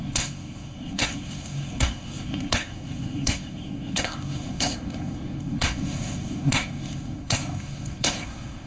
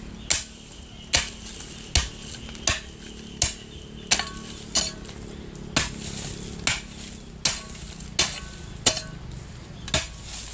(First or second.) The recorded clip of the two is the second